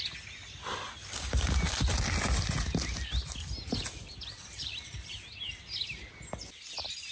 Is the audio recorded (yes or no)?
yes